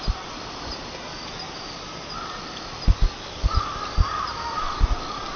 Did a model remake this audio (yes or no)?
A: no